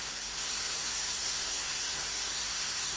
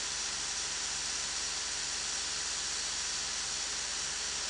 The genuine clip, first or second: second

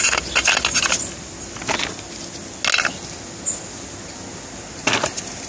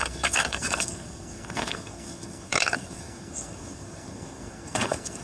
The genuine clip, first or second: first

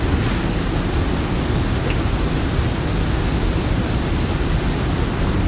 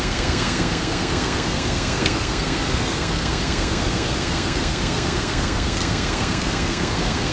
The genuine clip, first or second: first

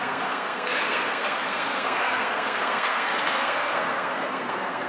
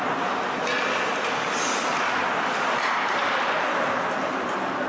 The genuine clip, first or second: second